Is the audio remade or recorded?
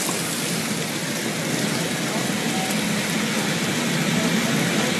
recorded